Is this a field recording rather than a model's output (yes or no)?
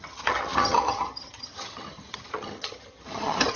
no